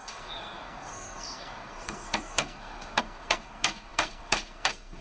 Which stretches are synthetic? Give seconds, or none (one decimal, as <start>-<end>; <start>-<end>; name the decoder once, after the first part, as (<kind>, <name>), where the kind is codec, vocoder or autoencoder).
0.0-5.0 (codec, SNAC)